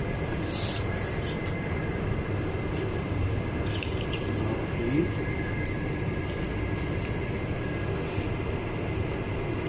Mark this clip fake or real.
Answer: real